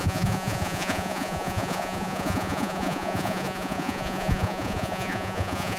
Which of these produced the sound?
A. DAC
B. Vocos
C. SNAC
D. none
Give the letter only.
B